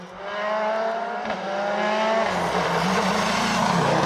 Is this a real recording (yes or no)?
yes